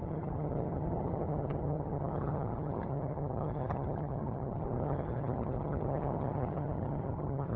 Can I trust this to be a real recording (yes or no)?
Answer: no